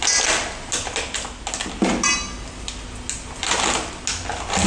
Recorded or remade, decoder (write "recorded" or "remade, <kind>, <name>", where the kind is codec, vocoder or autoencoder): recorded